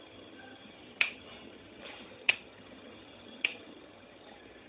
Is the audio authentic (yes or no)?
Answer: no